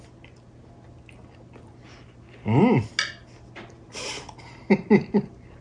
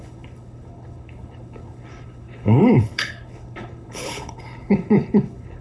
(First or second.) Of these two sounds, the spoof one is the second